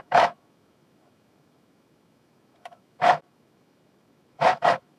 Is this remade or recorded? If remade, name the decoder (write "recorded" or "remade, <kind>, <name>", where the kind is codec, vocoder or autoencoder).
remade, autoencoder, DAC-VAE